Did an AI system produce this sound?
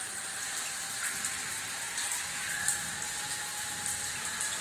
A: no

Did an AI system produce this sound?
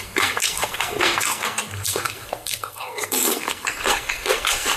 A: yes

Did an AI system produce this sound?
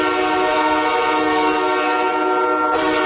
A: no